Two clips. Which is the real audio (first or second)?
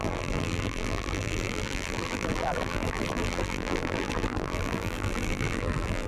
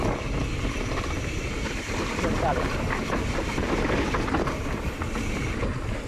second